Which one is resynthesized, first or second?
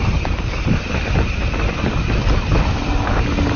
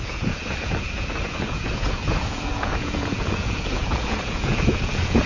second